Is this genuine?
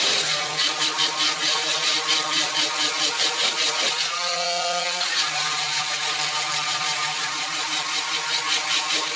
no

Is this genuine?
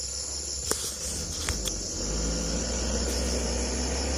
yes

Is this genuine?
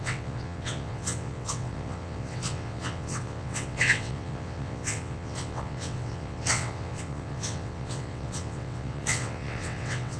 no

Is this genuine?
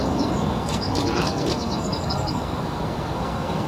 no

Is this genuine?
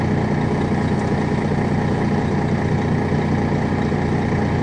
yes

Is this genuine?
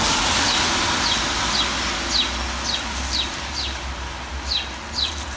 yes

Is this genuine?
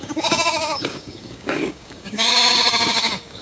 no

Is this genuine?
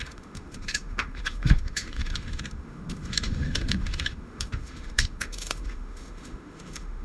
no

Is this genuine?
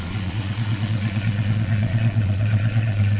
no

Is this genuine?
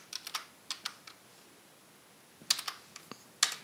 yes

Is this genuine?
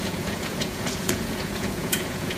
no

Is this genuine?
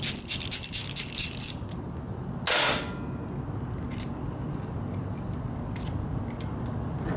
yes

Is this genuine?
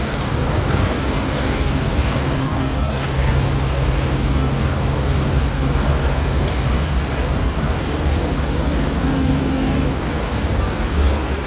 no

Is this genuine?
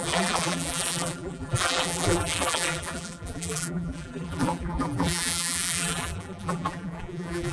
no